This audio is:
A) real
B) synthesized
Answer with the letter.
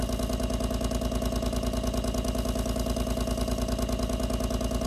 A